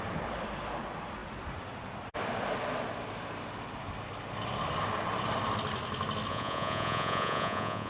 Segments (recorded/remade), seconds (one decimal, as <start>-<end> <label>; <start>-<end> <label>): 0.0-6.3 recorded; 6.3-7.9 remade